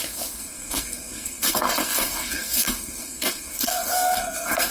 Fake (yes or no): yes